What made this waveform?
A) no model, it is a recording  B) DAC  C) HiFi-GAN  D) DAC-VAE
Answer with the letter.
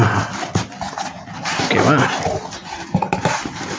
A